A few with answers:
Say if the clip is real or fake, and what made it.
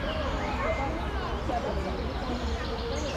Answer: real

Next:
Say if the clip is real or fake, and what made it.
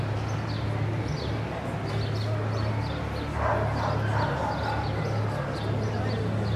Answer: real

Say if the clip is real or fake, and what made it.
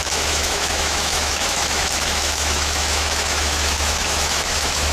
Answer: fake, autoencoder, DAC-VAE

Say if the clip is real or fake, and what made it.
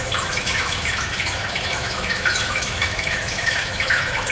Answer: fake, autoencoder, DAC-VAE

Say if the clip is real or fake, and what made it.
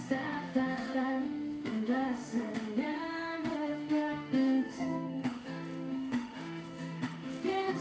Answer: fake, autoencoder, DAC-VAE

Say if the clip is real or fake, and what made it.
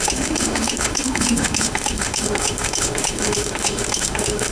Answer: fake, autoencoder, DAC-VAE